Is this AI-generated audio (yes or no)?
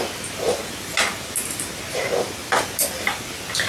no